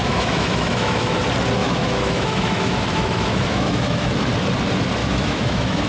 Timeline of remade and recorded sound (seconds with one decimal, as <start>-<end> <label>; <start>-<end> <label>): 0.0-1.2 remade; 1.2-1.6 recorded; 1.6-4.1 remade; 4.1-5.0 recorded; 5.0-5.9 remade